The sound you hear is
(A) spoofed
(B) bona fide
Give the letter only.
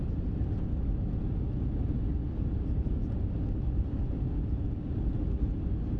B